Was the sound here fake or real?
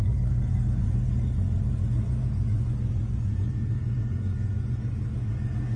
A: fake